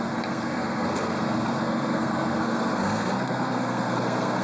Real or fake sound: fake